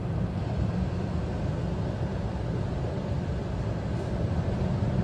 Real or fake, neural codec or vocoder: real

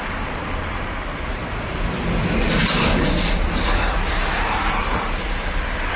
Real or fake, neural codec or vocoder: real